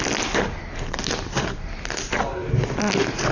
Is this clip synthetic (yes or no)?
no